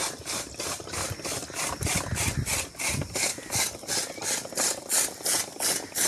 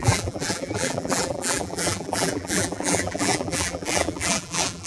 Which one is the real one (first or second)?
first